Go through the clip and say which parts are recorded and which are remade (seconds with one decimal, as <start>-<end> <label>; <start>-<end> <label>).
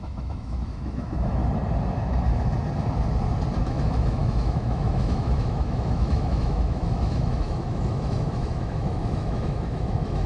0.0-1.4 remade; 1.4-3.6 recorded; 3.6-10.3 remade